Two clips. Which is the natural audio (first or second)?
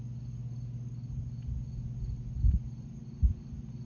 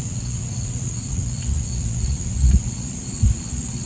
first